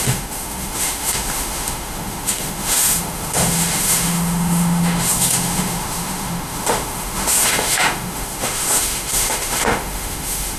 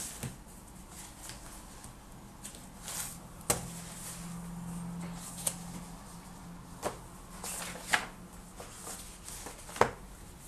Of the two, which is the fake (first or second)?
first